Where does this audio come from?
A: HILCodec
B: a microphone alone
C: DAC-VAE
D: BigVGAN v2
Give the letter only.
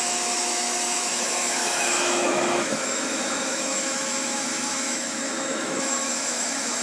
C